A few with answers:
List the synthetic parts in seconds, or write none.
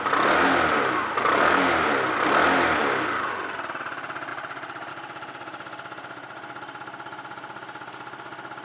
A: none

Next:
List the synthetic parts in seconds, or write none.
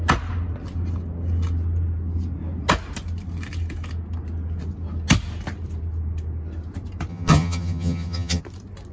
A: 7.1-8.4 (vocoder, HiFi-GAN)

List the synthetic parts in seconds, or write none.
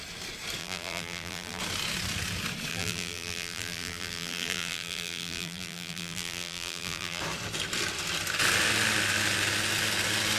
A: 0.6-1.6 (vocoder, BigVGAN v2); 2.7-7.2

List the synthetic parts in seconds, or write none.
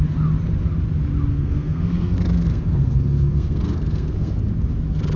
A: 1.3-4.4 (codec, SNAC)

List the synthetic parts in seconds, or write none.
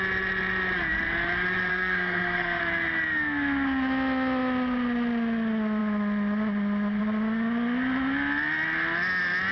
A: 1.7-2.6 (codec, SNAC)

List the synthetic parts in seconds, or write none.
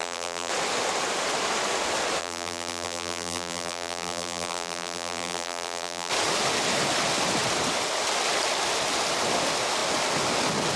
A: 0.0-0.5 (vocoder, BigVGAN v2); 2.2-6.1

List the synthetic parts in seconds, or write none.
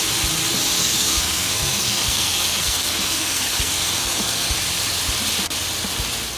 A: 0.8-4.6 (codec, SNAC)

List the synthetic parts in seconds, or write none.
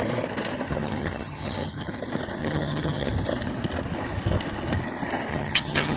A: 0.7-1.9 (vocoder, HiFi-GAN); 2.4-3.1; 5.3-6.0